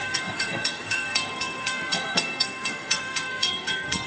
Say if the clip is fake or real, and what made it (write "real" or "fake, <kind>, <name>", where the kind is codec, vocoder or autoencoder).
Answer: fake, codec, SNAC